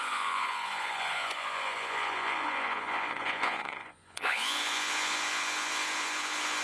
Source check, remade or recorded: remade